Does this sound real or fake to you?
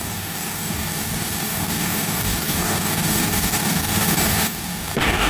fake